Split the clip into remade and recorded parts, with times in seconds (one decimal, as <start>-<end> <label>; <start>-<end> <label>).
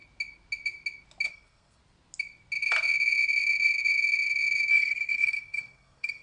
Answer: 0.0-1.3 recorded; 1.3-1.8 remade; 1.8-4.7 recorded; 4.7-6.2 remade